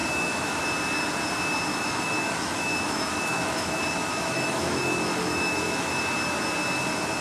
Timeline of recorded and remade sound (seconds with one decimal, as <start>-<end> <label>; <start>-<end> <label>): 0.0-0.6 remade; 0.6-1.7 recorded; 1.7-6.0 remade; 6.0-7.2 recorded